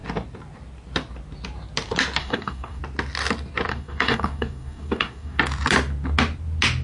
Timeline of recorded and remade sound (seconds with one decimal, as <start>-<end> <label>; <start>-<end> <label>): 0.0-2.2 recorded; 2.2-2.8 remade; 2.8-3.7 recorded; 3.7-5.4 remade; 5.4-6.8 recorded